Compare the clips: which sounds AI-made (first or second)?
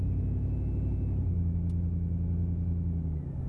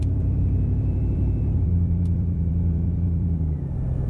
second